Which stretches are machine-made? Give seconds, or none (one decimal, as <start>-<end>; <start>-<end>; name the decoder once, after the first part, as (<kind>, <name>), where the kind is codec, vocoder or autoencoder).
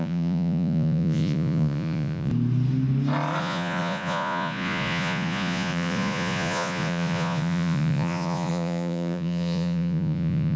0.0-2.3 (vocoder, Vocos); 3.4-10.6